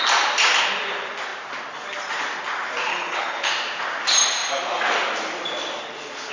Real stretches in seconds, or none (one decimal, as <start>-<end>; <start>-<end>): 0.0-2.9; 3.5-6.3